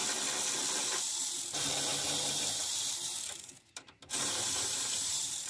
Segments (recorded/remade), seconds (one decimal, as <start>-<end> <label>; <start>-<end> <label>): 0.0-0.8 recorded; 0.8-5.5 remade